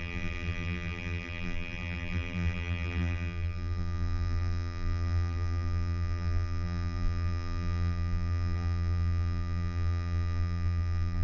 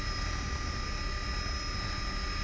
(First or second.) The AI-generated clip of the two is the first